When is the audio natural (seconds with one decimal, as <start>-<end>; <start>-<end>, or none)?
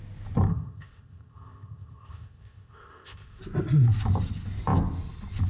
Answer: 0.0-0.5; 3.4-5.5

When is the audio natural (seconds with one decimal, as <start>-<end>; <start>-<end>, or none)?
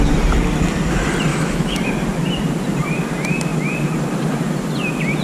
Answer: 0.0-1.3; 1.9-5.2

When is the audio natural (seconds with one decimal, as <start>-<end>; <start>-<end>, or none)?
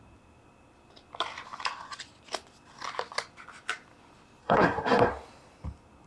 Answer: 0.0-4.4; 5.1-6.1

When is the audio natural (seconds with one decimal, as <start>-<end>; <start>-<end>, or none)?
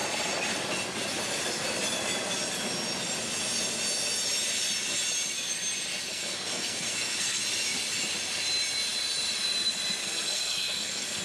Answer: 0.0-6.1; 7.4-10.0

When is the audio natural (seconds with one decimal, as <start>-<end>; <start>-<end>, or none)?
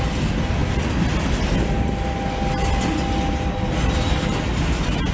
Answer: 0.0-5.1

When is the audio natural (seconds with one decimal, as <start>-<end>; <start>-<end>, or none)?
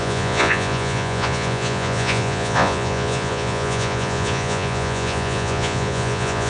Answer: none